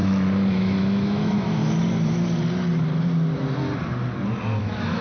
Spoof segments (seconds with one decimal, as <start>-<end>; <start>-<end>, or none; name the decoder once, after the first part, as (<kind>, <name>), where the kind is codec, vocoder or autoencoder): 0.5-1.6 (autoencoder, DAC-VAE); 4.6-5.0